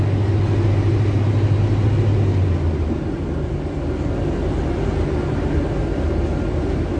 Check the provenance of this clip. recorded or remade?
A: recorded